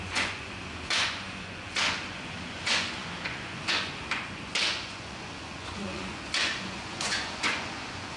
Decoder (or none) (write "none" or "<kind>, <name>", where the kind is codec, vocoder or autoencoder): vocoder, Vocos